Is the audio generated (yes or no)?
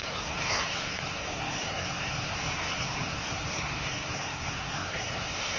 yes